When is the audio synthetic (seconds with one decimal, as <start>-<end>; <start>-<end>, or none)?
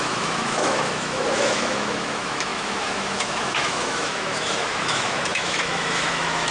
0.0-6.5